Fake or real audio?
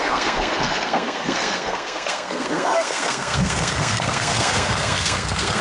fake